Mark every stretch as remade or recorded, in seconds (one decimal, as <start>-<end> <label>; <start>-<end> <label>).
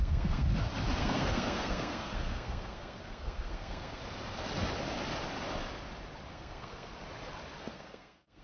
0.0-0.5 remade; 0.5-1.0 recorded; 1.0-4.0 remade; 4.0-6.3 recorded; 6.3-6.9 remade; 6.9-7.6 recorded; 7.6-8.4 remade